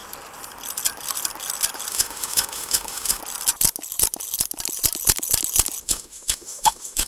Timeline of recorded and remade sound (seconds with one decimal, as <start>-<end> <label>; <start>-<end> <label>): 0.0-1.9 recorded; 1.9-3.2 remade; 3.2-5.8 recorded; 5.8-7.1 remade